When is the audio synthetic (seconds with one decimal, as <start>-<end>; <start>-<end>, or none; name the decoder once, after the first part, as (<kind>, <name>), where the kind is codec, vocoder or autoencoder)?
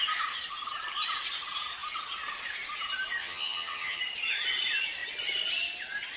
3.2-4.0 (vocoder, HiFi-GAN)